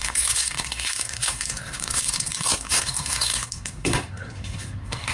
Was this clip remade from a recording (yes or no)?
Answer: yes